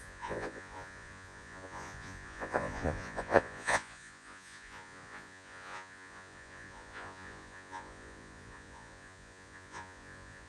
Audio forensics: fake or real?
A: fake